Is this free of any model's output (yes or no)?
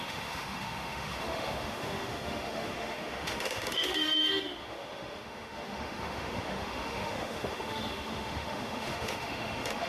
no